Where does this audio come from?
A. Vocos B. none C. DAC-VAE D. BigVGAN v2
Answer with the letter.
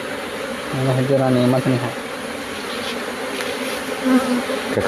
B